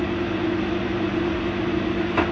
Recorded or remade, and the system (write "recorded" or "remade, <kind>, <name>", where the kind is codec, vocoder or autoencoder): recorded